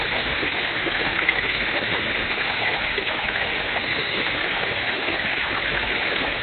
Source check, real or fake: fake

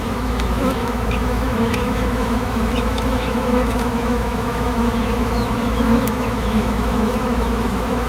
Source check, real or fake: fake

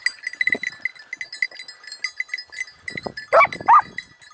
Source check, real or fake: real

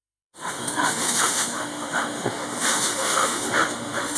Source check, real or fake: fake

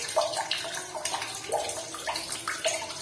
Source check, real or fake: real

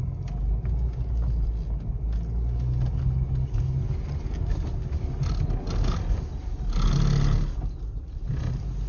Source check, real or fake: real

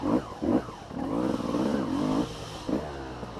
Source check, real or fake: real